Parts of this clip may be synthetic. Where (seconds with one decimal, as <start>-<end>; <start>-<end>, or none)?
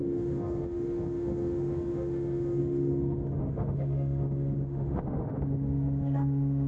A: 0.0-6.7